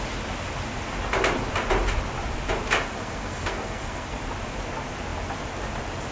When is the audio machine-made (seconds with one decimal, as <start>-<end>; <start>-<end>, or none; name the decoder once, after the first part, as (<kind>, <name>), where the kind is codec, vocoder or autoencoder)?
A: 2.9-4.2 (codec, SNAC)

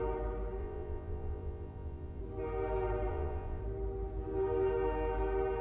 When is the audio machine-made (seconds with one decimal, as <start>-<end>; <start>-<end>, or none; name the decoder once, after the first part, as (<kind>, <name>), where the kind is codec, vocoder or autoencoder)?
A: 0.6-2.2 (vocoder, Vocos); 3.1-3.6

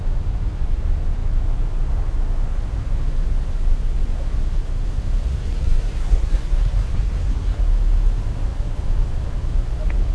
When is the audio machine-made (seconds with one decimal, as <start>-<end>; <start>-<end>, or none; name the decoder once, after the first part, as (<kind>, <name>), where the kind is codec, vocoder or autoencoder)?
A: 5.4-7.6 (codec, SNAC)

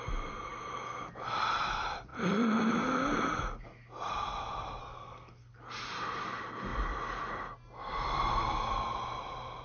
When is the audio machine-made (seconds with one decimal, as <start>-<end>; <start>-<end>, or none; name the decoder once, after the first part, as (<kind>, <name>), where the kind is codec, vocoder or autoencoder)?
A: 4.8-5.5 (codec, SNAC)